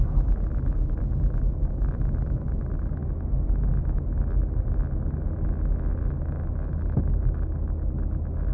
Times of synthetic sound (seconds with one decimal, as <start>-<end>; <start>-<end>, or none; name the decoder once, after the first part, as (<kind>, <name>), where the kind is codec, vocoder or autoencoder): 0.0-3.0 (autoencoder, DAC-VAE); 7.1-8.5